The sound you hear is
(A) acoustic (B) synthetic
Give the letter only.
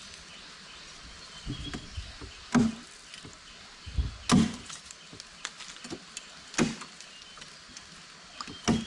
A